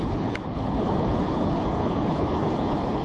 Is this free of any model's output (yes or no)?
no